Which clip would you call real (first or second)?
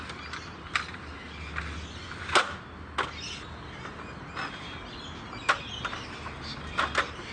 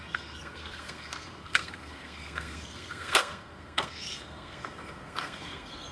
first